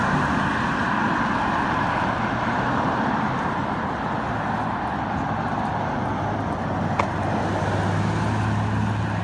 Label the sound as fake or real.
real